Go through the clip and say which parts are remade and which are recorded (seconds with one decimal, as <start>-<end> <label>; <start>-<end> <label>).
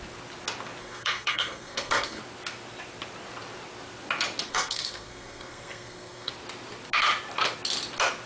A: 0.0-0.8 recorded; 0.8-2.2 remade; 2.2-4.5 recorded; 4.5-6.3 remade; 6.3-8.3 recorded